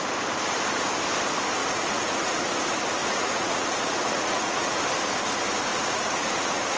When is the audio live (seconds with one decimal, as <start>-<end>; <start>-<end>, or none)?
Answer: 0.0-1.6; 2.5-3.0; 4.8-5.7